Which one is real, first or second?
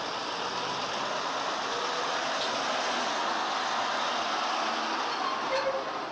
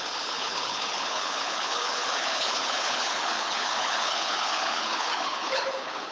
first